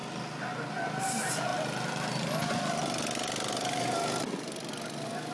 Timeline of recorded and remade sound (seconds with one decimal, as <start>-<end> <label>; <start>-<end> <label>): 0.0-5.3 recorded